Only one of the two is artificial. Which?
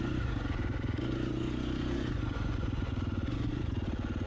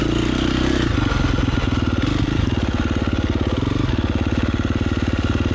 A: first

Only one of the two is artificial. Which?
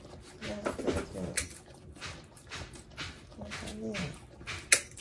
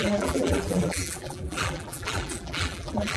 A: second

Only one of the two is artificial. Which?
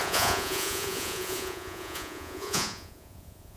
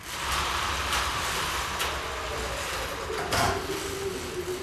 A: first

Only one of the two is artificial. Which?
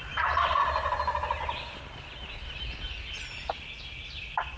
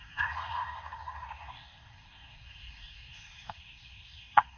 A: second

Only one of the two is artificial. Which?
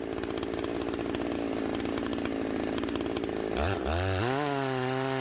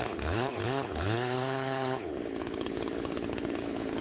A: second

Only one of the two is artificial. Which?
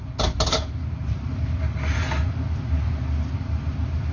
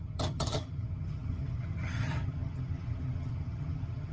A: second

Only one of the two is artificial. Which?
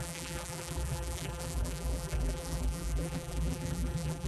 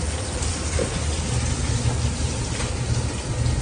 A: first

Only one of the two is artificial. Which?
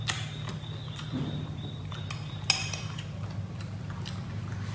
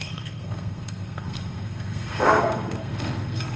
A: second